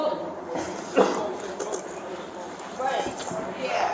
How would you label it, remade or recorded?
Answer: recorded